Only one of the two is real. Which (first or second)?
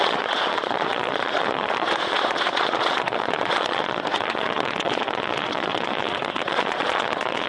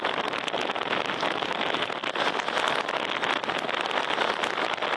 second